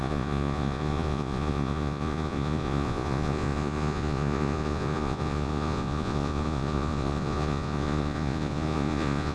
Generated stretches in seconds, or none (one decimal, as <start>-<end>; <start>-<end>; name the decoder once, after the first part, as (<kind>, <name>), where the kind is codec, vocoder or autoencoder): 0.0-9.3 (vocoder, Vocos)